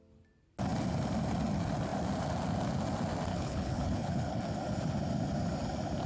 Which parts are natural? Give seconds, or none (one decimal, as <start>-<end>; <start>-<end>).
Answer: 0.0-3.3; 4.4-6.1